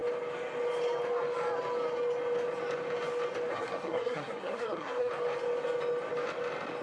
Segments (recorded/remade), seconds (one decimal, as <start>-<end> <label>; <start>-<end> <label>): 0.0-3.5 recorded; 3.5-5.1 remade; 5.1-6.8 recorded